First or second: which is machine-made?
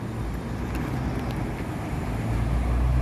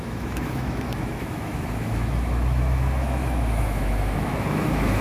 second